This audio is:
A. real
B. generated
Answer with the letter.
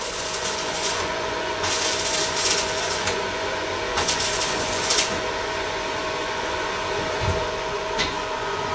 B